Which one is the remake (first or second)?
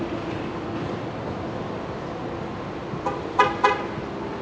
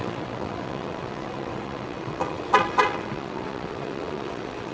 second